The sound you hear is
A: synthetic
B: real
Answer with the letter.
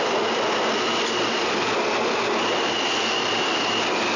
B